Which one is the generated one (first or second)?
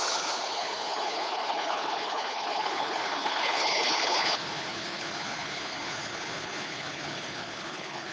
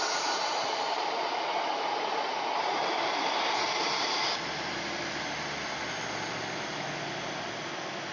first